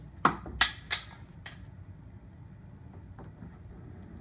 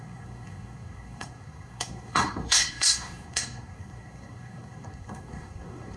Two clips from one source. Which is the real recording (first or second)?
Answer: first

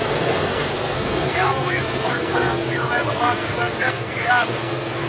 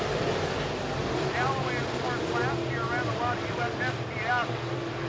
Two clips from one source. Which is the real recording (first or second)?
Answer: second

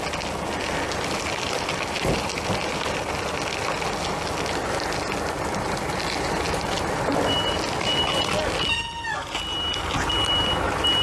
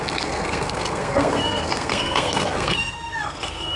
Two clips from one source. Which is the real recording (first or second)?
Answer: first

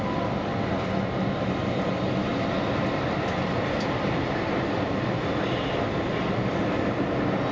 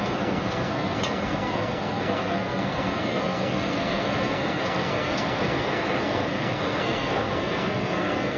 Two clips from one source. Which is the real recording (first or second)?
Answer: first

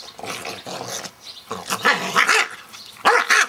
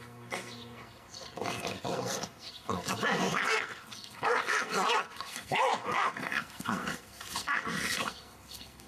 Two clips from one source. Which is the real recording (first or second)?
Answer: first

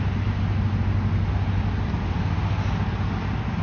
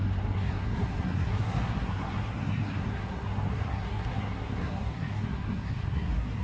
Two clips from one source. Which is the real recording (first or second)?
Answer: first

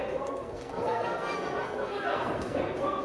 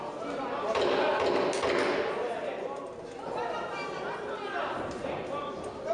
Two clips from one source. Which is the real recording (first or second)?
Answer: second